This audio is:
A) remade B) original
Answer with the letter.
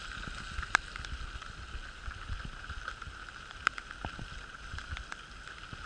B